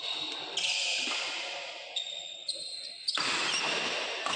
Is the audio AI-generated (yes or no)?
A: no